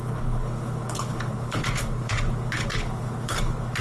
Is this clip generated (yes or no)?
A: yes